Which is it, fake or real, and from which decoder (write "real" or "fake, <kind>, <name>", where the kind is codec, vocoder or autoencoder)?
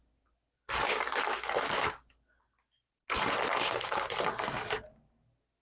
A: real